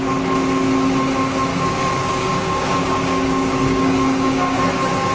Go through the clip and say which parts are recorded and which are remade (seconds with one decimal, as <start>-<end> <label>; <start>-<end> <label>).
0.0-1.5 recorded; 1.5-4.6 remade; 4.6-5.1 recorded